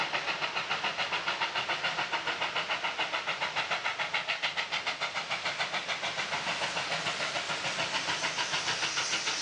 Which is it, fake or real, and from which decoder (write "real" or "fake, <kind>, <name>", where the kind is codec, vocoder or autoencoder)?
real